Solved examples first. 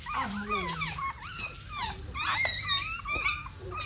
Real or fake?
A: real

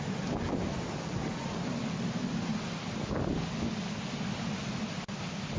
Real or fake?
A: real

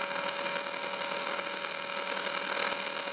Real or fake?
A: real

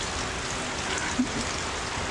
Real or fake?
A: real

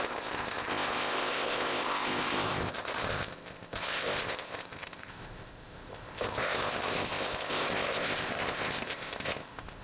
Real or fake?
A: fake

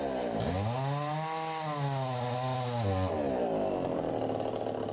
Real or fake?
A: real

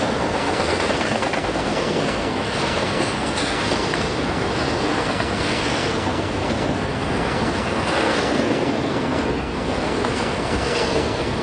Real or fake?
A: fake